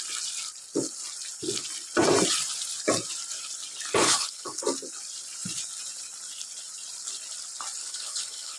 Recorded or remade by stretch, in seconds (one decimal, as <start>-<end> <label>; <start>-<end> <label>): 0.0-4.0 recorded; 4.0-4.6 remade; 4.6-7.8 recorded; 7.8-8.6 remade